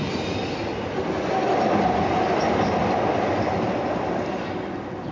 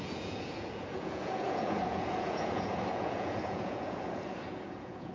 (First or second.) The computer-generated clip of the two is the second